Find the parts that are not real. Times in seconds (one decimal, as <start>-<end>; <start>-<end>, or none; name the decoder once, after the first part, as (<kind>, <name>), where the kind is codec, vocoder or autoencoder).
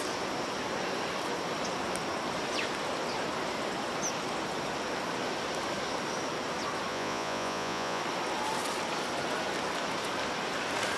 6.9-8.0 (vocoder, Vocos)